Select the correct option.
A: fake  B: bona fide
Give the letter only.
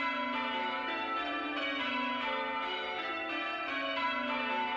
B